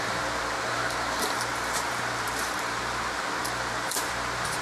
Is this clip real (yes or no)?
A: no